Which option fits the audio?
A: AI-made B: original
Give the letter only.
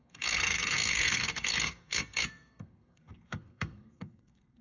A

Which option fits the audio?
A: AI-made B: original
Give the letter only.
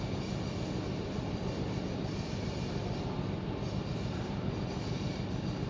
A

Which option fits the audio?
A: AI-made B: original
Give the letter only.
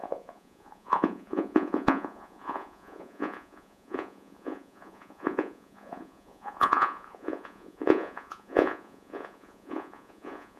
A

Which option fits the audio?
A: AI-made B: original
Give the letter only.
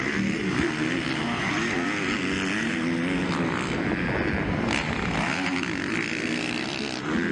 B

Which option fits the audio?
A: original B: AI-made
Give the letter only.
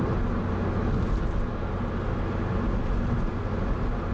A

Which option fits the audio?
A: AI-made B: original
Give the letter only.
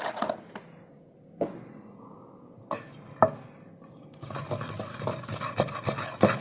B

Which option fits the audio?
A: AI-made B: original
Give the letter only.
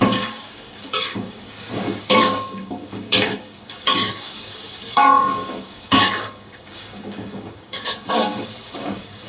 A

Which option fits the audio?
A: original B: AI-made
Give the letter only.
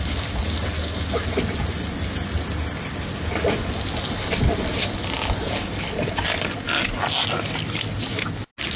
A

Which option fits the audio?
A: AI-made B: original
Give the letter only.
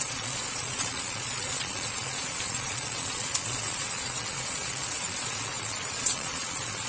A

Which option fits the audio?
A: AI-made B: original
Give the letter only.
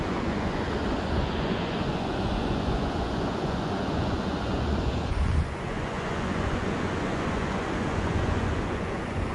A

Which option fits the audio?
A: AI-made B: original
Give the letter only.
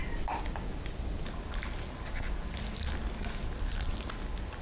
B